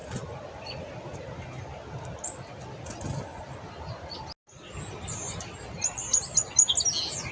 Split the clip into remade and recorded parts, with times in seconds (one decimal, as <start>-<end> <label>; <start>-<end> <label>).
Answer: 0.0-7.3 recorded